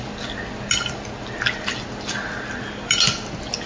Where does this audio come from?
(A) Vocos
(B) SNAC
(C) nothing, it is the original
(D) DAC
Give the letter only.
C